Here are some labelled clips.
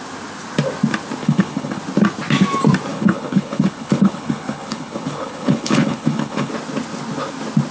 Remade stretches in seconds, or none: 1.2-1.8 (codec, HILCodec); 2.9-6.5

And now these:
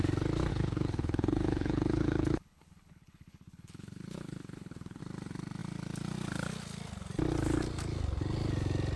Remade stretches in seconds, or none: 0.5-5.0 (codec, HILCodec)

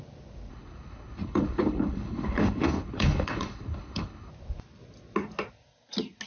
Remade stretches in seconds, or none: 0.5-4.3 (codec, HILCodec)